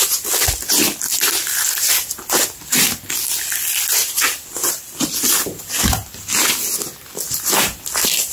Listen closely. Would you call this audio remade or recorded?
recorded